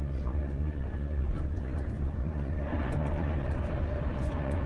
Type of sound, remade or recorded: remade